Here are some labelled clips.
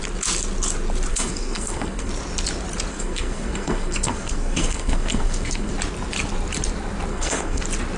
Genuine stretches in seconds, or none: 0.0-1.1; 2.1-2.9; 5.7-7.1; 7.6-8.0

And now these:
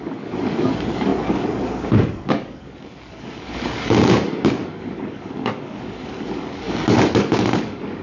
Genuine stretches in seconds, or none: none

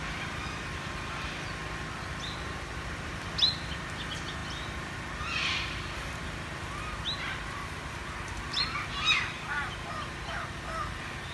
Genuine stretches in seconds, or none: 0.0-11.3

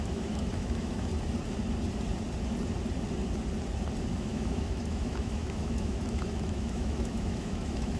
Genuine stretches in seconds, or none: 1.1-4.1

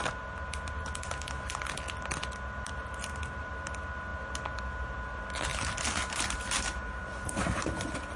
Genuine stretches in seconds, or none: 0.0-2.8; 3.5-5.5; 7.7-8.2